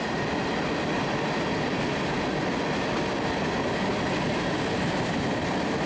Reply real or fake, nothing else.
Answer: real